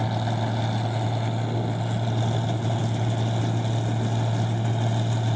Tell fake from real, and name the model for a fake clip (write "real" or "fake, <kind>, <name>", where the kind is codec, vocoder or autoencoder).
real